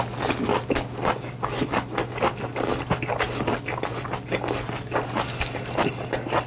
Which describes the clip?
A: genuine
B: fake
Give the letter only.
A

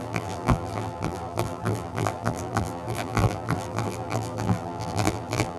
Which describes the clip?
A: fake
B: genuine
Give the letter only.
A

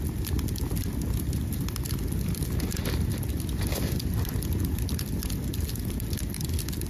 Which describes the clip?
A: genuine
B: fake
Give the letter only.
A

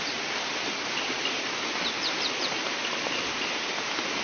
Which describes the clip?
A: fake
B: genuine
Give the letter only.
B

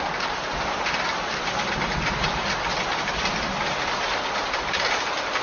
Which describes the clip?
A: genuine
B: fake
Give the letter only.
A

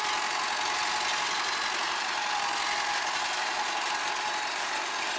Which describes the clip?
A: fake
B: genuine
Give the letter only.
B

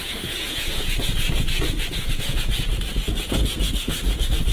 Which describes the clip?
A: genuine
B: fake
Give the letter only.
B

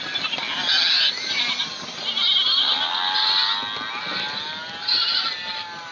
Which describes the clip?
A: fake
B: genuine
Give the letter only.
B